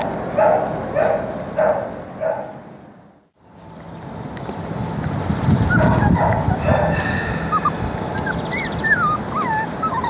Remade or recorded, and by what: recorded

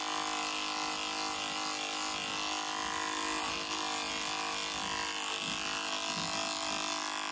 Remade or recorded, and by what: recorded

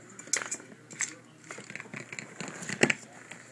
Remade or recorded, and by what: recorded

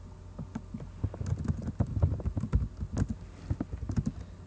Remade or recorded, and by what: recorded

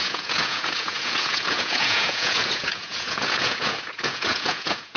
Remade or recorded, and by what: remade, vocoder, Vocos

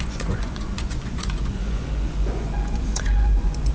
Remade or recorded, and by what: remade, vocoder, Vocos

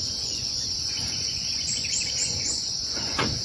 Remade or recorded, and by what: remade, vocoder, Vocos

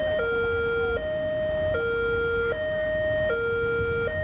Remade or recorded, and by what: recorded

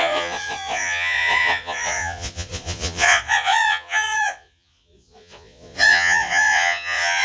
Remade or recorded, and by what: remade, vocoder, Vocos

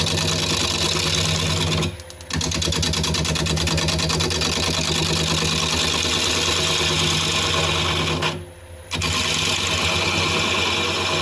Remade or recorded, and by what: recorded